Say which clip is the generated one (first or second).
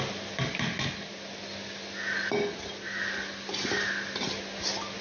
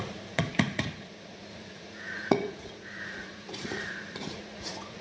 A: second